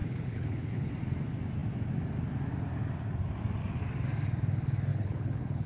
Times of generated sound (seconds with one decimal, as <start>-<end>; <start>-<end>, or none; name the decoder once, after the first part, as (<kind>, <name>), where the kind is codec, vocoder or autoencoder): 0.0-0.9 (codec, HILCodec); 4.9-5.7

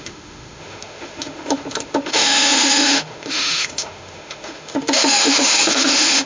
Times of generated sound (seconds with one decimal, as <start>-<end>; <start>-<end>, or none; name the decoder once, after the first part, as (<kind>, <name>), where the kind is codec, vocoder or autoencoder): 0.0-6.3 (autoencoder, DAC-VAE)